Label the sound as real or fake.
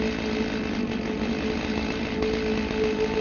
real